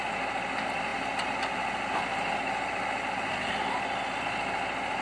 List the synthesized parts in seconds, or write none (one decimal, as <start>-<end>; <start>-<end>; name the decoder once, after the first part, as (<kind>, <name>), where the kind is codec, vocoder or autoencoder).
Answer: none

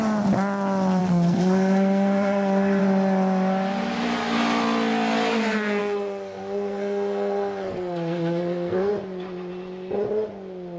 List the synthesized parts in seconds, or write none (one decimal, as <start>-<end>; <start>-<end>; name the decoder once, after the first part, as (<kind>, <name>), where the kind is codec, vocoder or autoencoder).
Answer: 1.0-2.8 (codec, SNAC); 5.8-8.9

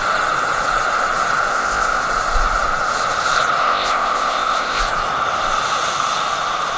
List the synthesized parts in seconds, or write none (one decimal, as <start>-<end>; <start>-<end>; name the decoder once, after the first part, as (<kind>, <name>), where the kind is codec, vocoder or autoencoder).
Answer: 1.5-2.0 (codec, ZipCodec); 3.6-4.8

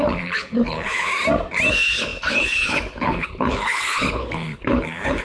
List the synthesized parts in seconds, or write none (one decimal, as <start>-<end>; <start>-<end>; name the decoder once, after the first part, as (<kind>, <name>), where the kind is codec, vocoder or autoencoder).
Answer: 0.0-1.1 (codec, HILCodec); 1.7-5.2

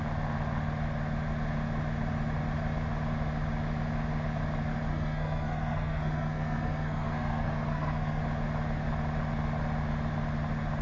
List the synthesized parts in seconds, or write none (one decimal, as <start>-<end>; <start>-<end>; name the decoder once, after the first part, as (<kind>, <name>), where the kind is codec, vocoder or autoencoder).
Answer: 4.9-8.2 (codec, SNAC)